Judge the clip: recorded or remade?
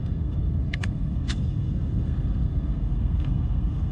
remade